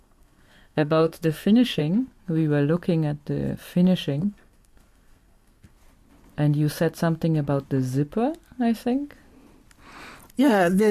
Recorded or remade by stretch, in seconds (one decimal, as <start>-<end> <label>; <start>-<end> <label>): 0.0-1.8 remade; 1.8-4.2 recorded; 4.2-5.8 remade; 5.8-10.4 recorded; 10.4-10.9 remade

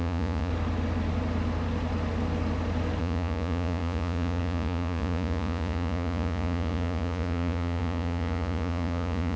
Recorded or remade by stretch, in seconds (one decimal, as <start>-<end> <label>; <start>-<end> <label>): 0.0-0.5 remade; 0.5-3.0 recorded; 3.0-9.4 remade

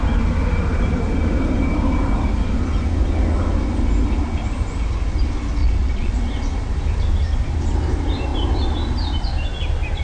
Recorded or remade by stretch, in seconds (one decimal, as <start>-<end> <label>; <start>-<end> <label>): 0.0-5.6 recorded; 5.6-6.1 remade; 6.1-10.0 recorded

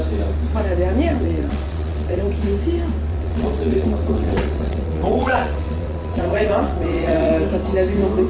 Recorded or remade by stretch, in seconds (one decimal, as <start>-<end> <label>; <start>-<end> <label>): 0.0-1.1 recorded; 1.1-2.2 remade; 2.2-3.1 recorded; 3.1-7.3 remade; 7.3-8.3 recorded

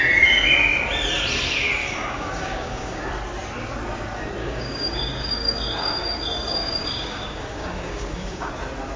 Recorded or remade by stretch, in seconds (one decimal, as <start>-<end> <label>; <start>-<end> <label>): 0.0-1.8 recorded; 1.8-3.1 remade; 3.1-4.4 recorded; 4.4-8.5 remade; 8.5-9.0 recorded

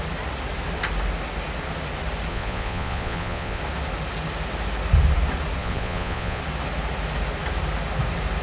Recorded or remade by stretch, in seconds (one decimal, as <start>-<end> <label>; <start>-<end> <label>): 0.0-2.3 recorded; 2.3-3.6 remade; 3.6-5.6 recorded; 5.6-6.4 remade; 6.4-8.4 recorded

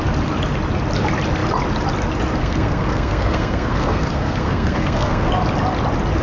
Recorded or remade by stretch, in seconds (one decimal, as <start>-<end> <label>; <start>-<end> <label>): 0.0-2.4 recorded; 2.4-5.3 remade; 5.3-6.2 recorded